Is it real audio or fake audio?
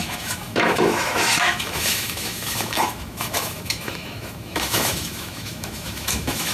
fake